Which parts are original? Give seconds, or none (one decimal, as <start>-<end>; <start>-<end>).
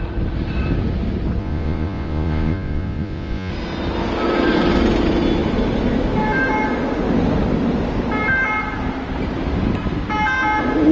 0.0-1.4; 3.5-10.9